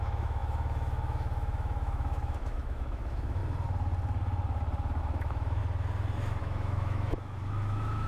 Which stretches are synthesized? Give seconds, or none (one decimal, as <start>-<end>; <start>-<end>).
0.0-3.4; 5.0-5.6; 6.4-8.1